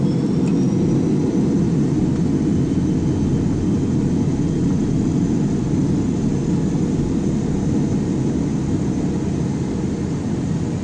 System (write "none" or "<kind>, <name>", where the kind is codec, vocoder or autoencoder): none